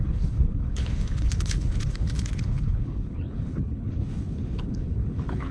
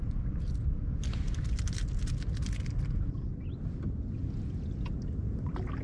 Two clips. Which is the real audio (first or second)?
second